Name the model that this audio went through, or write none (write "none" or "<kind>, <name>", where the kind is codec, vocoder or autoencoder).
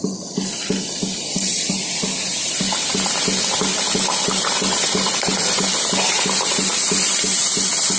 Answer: none